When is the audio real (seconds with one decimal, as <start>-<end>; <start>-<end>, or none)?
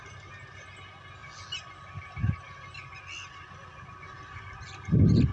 0.0-5.3